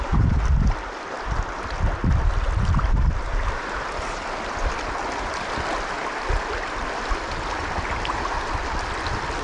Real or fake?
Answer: real